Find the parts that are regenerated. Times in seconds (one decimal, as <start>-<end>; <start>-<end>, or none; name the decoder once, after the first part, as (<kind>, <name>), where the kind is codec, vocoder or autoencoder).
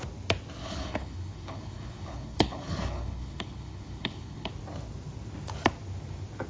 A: 0.6-4.5 (codec, HILCodec)